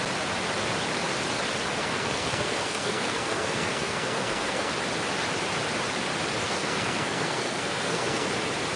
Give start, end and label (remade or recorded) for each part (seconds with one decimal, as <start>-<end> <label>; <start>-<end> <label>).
0.0-1.8 recorded; 1.8-4.7 remade; 4.7-6.4 recorded; 6.4-8.3 remade; 8.3-8.8 recorded